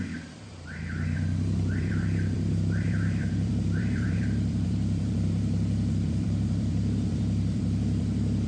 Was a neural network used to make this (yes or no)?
yes